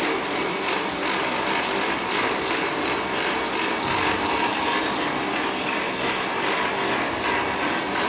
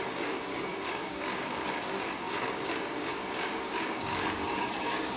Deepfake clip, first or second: second